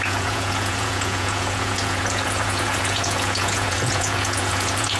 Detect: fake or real fake